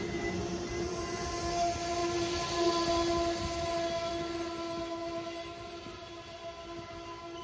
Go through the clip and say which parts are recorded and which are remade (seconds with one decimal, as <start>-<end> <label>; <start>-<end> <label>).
0.0-7.4 recorded